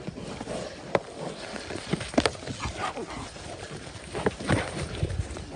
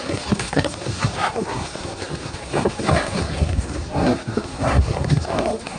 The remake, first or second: second